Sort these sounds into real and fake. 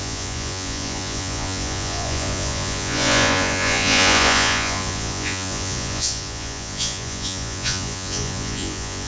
fake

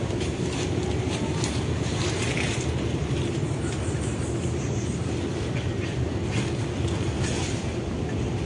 real